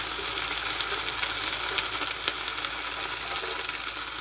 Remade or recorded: recorded